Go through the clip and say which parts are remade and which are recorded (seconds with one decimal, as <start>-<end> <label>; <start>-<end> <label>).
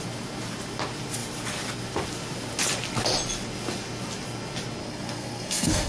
0.0-4.8 recorded; 4.8-5.9 remade